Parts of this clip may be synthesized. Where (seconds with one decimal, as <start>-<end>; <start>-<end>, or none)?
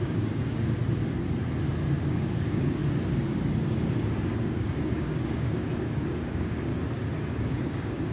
0.0-0.8; 2.0-2.8; 4.0-6.7; 7.3-8.1